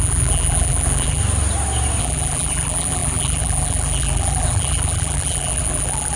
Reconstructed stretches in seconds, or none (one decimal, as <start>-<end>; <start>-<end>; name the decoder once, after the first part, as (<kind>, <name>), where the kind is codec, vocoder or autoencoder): 0.0-1.2 (vocoder, BigVGAN v2); 2.0-6.2